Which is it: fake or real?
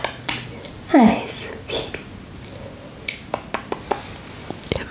real